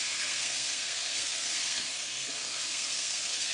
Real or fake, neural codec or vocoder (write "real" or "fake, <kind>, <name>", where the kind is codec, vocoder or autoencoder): fake, codec, SNAC